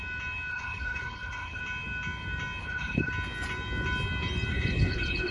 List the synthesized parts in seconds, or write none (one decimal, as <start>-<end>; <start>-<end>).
0.5-1.6; 2.6-3.1; 4.5-5.3